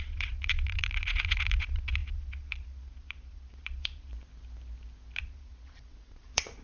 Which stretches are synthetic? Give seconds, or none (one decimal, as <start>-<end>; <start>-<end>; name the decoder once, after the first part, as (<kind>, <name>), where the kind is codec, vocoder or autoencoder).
0.0-4.1 (vocoder, Vocos); 5.2-6.6